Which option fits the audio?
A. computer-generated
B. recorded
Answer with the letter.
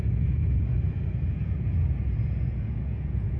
A